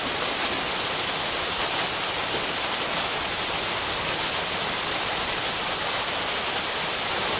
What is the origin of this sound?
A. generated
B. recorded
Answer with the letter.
B